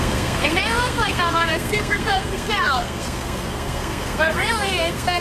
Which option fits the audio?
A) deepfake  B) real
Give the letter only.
A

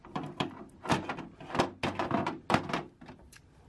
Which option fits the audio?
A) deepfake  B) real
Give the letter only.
B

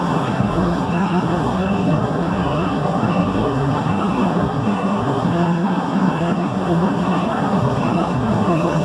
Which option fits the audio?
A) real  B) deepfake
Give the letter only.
B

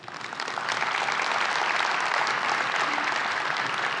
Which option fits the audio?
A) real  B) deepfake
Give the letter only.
A